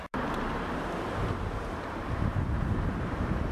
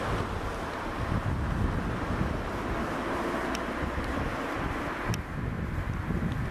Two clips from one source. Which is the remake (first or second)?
first